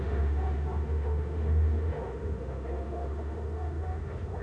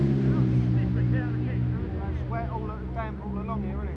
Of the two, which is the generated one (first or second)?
first